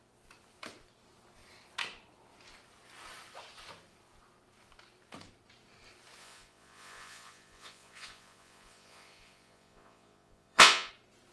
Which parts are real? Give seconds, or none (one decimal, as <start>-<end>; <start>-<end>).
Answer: 0.0-6.2; 10.9-11.3